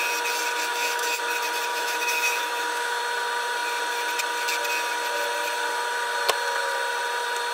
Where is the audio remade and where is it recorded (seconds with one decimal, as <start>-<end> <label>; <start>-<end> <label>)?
0.0-0.7 recorded; 0.7-1.2 remade; 1.2-1.7 recorded; 1.7-3.0 remade; 3.0-7.5 recorded